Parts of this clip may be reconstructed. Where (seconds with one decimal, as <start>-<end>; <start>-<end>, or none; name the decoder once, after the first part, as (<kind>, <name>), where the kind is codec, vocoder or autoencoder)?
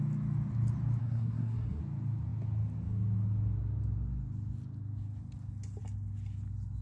1.0-1.8 (codec, SNAC)